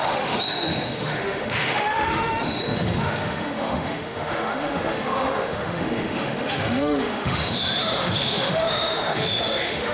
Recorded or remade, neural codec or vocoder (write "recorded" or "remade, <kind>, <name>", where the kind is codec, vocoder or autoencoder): remade, autoencoder, DAC-VAE